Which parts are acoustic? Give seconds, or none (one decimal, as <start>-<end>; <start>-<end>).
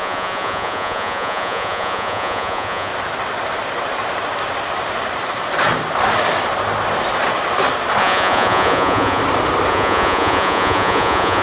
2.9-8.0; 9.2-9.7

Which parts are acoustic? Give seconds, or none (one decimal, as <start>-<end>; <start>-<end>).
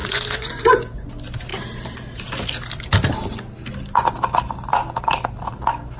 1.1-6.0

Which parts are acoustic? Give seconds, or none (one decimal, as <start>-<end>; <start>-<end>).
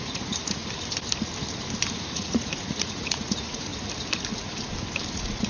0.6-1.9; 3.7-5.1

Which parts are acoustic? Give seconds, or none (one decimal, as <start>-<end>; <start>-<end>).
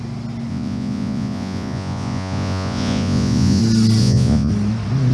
0.0-0.5; 3.6-4.0; 4.5-5.1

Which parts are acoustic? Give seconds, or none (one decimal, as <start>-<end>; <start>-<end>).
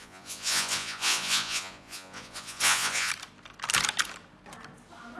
3.1-5.2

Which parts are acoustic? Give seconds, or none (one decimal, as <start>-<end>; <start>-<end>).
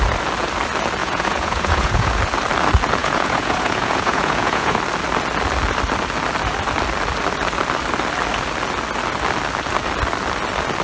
0.0-1.0; 2.2-3.0; 4.8-10.8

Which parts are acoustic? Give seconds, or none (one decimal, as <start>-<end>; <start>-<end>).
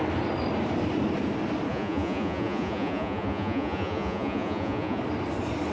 0.0-1.7; 5.0-5.7